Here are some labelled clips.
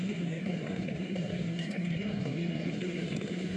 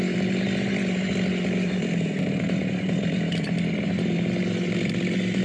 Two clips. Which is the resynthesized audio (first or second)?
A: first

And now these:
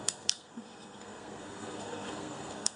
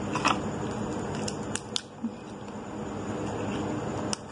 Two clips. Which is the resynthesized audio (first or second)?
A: first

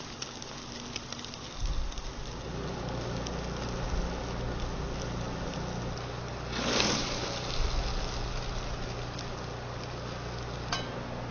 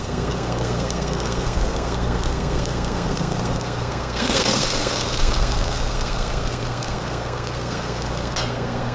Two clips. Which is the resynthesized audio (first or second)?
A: second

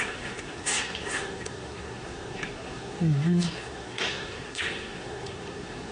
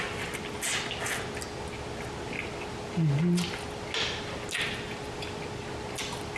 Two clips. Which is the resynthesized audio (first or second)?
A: first